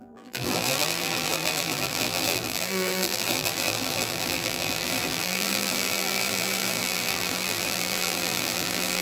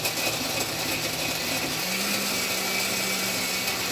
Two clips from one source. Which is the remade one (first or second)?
first